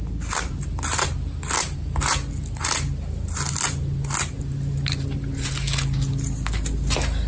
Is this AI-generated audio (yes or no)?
no